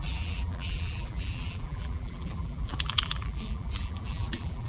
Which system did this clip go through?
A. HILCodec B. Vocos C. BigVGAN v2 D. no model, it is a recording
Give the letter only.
C